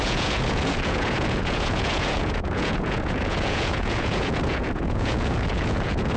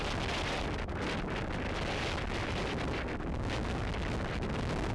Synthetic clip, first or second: first